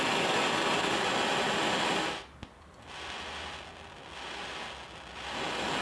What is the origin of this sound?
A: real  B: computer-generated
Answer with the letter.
A